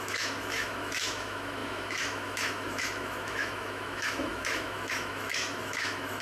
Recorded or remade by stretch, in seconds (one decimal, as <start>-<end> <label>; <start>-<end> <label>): 0.0-6.2 remade